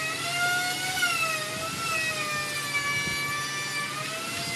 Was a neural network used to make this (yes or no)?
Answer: no